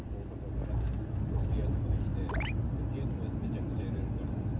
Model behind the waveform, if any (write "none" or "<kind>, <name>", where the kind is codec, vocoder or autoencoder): none